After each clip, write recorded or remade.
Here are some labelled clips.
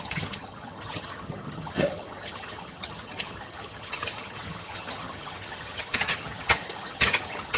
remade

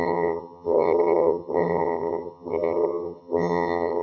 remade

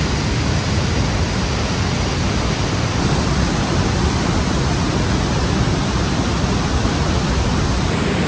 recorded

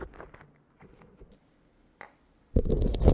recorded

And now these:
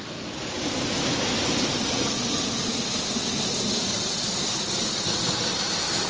recorded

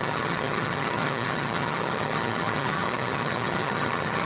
remade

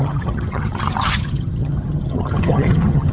remade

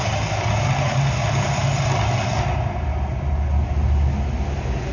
recorded